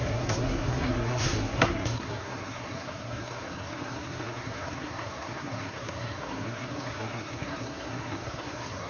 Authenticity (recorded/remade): remade